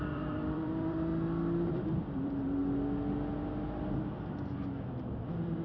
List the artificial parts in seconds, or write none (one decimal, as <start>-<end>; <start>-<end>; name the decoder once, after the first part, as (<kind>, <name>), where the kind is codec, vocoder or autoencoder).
0.0-1.1 (vocoder, BigVGAN v2); 1.7-2.6; 5.0-5.6